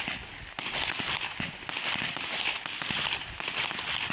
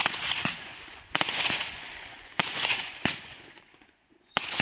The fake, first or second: second